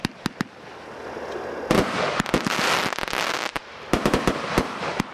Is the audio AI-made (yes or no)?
no